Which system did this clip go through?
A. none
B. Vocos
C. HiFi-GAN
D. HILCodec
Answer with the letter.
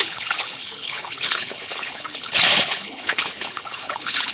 D